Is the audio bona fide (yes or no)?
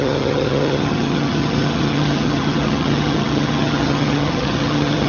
no